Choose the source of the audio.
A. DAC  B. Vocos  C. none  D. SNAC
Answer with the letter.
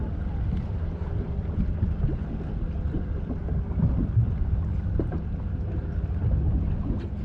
C